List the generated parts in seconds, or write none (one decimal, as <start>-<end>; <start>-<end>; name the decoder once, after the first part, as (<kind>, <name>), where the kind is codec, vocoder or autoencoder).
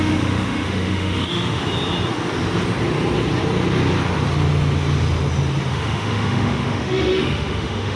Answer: 0.0-1.6 (autoencoder, DAC-VAE); 5.7-8.0